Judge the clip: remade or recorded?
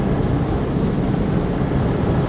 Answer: recorded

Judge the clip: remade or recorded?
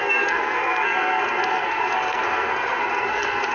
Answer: remade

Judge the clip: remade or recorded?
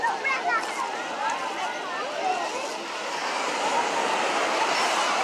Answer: recorded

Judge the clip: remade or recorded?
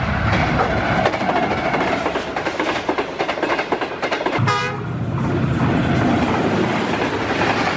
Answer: recorded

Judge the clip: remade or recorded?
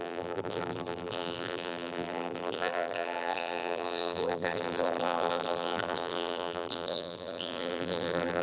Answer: remade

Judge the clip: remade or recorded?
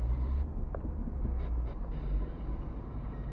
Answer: recorded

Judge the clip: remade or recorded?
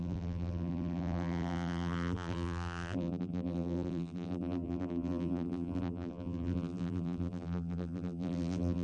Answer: remade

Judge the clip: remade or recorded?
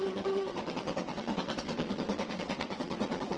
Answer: remade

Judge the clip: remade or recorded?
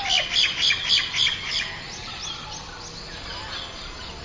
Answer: recorded